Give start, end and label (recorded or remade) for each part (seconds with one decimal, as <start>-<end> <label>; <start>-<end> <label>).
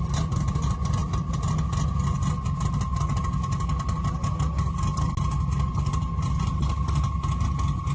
0.0-7.9 recorded